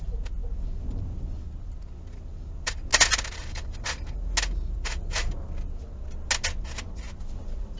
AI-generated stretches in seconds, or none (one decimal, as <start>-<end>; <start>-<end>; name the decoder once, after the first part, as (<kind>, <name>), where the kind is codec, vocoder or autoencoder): none